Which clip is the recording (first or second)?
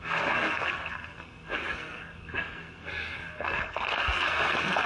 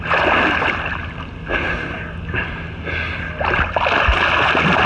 second